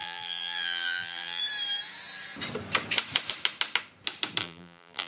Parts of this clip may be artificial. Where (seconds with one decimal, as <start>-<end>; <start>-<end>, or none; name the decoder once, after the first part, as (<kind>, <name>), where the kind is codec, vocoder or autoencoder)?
0.0-1.4 (vocoder, BigVGAN v2); 4.4-5.1